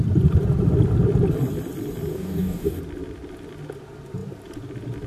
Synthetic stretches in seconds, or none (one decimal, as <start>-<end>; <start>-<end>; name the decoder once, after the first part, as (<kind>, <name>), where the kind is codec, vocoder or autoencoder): 2.1-2.8 (codec, DAC)